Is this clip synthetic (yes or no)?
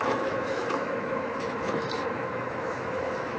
yes